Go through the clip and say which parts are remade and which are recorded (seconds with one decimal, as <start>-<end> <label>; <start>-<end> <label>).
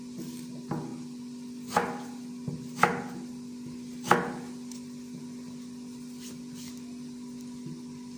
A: 0.0-8.2 recorded